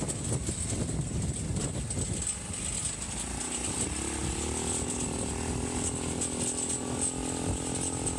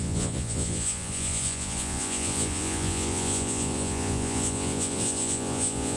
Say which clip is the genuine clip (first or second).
first